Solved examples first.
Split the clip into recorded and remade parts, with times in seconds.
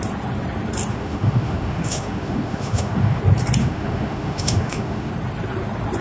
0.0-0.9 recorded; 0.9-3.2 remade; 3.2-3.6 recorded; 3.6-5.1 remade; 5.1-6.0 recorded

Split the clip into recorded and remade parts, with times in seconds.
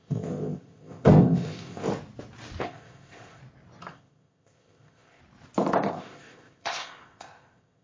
0.0-1.9 remade; 1.9-2.6 recorded; 2.6-3.4 remade; 3.4-3.9 recorded; 3.9-5.2 remade; 5.2-5.9 recorded; 5.9-7.8 remade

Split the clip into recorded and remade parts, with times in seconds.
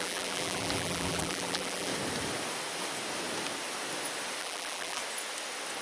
0.0-1.9 remade; 1.9-4.4 recorded; 4.4-5.0 remade; 5.0-5.8 recorded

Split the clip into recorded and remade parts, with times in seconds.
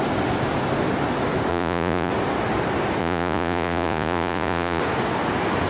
0.0-1.5 recorded; 1.5-2.1 remade; 2.1-3.0 recorded; 3.0-4.8 remade; 4.8-5.7 recorded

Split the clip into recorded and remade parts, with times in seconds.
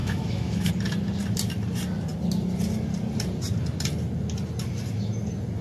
0.0-0.7 remade; 0.7-5.6 recorded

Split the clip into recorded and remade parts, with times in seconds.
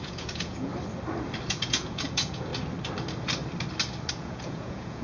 0.0-0.7 remade; 0.7-1.5 recorded; 1.5-2.5 remade; 2.5-4.1 recorded; 4.1-5.0 remade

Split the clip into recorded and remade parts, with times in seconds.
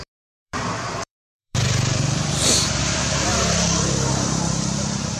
0.0-3.3 remade; 3.3-4.1 recorded; 4.1-5.2 remade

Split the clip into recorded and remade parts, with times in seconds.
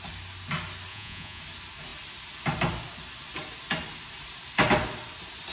0.0-0.9 recorded; 0.9-1.4 remade; 1.4-5.5 recorded